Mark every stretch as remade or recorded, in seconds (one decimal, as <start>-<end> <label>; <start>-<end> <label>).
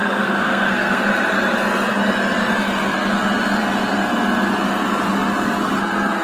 0.0-1.0 remade; 1.0-6.2 recorded